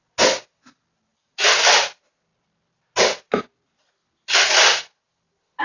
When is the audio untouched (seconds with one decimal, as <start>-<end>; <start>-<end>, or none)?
0.0-5.6